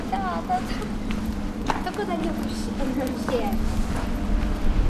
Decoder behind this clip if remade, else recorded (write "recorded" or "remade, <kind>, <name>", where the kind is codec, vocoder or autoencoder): recorded